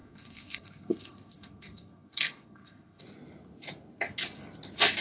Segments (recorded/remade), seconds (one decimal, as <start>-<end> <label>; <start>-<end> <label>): 0.0-3.0 remade; 3.0-5.0 recorded